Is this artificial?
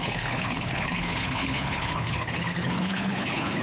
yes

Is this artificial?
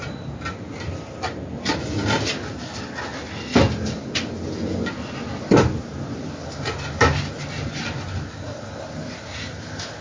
no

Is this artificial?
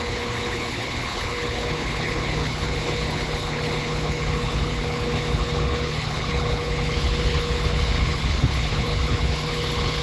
yes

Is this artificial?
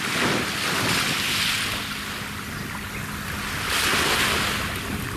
no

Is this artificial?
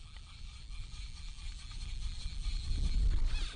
no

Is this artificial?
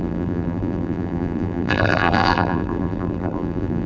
yes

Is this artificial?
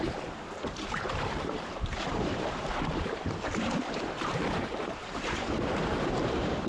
yes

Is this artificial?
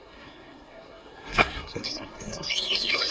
yes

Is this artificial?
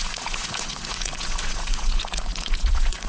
yes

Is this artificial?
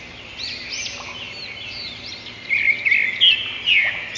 no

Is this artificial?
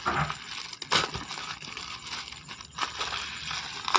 no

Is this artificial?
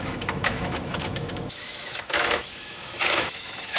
yes